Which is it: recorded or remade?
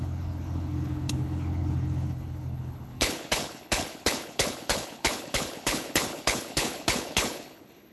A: remade